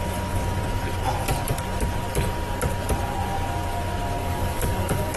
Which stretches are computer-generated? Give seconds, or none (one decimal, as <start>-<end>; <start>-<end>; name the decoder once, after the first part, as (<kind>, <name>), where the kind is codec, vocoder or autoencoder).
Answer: 4.2-5.2 (codec, DAC)